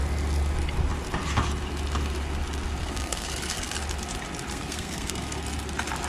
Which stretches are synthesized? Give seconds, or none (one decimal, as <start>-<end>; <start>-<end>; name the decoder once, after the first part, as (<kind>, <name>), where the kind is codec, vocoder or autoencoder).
2.8-3.7 (codec, SNAC); 4.5-5.4